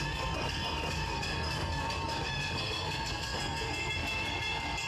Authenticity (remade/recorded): remade